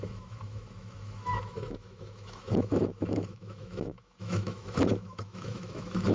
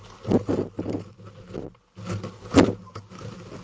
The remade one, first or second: first